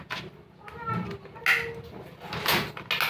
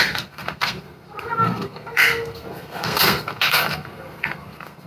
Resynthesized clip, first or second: second